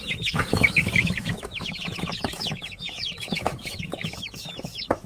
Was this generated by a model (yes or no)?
yes